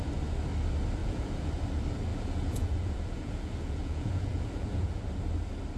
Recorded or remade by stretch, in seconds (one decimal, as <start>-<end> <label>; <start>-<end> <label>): 0.0-1.0 recorded; 1.0-1.5 remade; 1.5-2.1 recorded; 2.1-5.0 remade; 5.0-5.8 recorded